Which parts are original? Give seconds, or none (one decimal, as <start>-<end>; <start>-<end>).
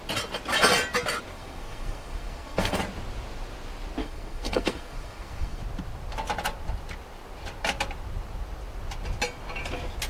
0.0-1.3; 2.8-4.0; 5.6-10.1